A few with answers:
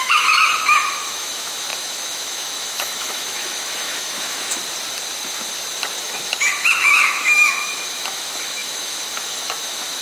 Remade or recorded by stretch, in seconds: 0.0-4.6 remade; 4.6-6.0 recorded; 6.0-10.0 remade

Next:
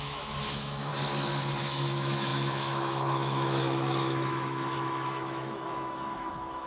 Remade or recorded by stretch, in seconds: 0.0-0.9 remade; 0.9-1.6 recorded; 1.6-6.7 remade

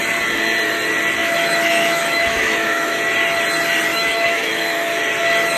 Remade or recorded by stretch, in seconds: 0.0-1.2 recorded; 1.2-3.0 remade; 3.0-3.9 recorded; 3.9-5.0 remade; 5.0-5.6 recorded

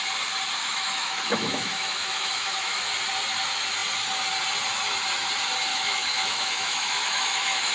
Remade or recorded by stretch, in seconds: 0.0-0.6 recorded; 0.6-2.8 remade; 2.8-5.7 recorded; 5.7-7.7 remade

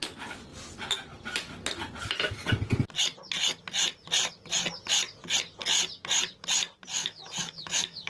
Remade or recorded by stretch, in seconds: 0.0-7.0 recorded; 7.0-8.1 remade

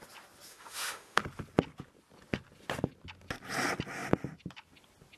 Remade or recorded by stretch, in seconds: 0.0-0.5 recorded; 0.5-1.2 remade; 1.2-5.2 recorded

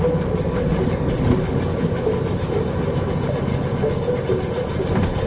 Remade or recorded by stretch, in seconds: 0.0-1.7 recorded; 1.7-2.5 remade; 2.5-3.5 recorded; 3.5-4.2 remade; 4.2-5.3 recorded

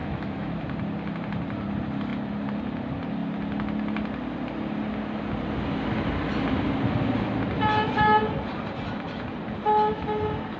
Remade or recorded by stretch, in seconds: 0.0-0.6 remade; 0.6-10.6 recorded